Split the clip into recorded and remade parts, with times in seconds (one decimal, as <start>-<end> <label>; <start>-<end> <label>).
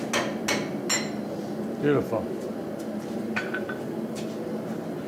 0.0-3.1 recorded; 3.1-5.1 remade